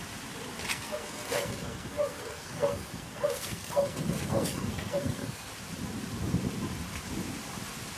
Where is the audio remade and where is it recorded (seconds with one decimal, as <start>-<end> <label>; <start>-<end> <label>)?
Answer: 0.0-0.7 recorded; 0.7-5.5 remade; 5.5-8.0 recorded